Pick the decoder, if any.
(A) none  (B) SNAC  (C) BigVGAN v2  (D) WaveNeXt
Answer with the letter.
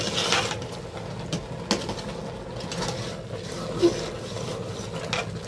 A